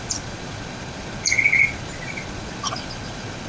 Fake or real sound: fake